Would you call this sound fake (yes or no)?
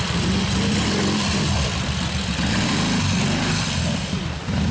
yes